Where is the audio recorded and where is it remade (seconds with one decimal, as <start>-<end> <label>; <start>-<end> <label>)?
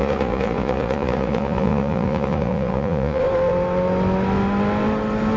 0.0-3.2 remade; 3.2-5.4 recorded